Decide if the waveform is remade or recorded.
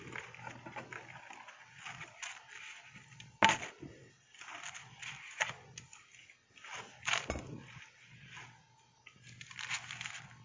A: recorded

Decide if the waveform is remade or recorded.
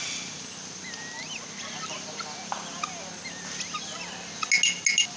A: recorded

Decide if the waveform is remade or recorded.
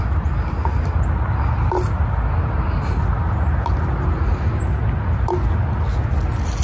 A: recorded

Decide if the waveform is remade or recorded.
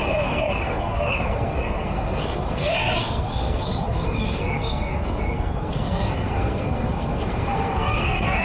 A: remade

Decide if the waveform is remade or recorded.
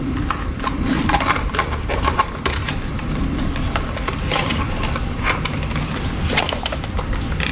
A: recorded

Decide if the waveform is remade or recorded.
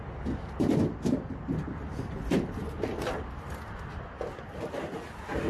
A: recorded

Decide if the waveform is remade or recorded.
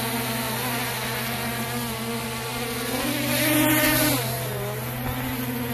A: recorded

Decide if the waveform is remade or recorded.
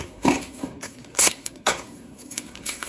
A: remade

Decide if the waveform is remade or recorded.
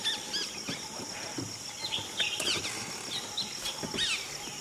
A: recorded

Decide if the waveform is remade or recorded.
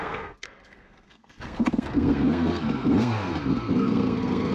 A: remade